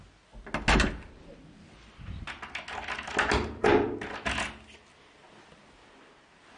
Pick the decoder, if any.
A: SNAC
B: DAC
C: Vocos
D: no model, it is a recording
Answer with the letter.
D